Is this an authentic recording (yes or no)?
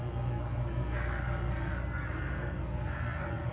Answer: no